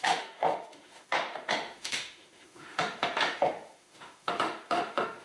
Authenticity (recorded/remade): remade